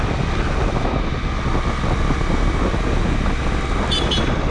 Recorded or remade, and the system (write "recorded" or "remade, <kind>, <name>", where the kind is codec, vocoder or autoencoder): recorded